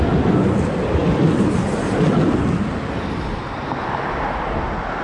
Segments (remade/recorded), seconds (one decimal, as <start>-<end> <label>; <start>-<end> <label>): 0.0-5.0 recorded